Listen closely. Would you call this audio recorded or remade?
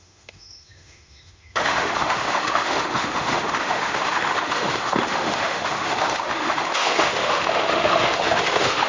remade